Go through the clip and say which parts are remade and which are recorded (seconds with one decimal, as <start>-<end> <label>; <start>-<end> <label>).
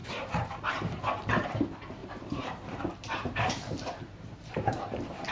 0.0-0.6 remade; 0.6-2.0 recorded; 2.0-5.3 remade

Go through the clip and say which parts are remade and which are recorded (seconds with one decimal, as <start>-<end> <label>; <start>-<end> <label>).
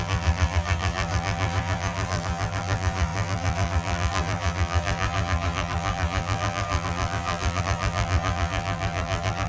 0.0-9.5 remade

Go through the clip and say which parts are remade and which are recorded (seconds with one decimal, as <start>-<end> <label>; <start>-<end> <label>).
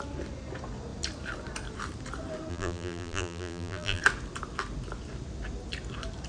0.0-2.5 recorded; 2.5-4.0 remade; 4.0-6.3 recorded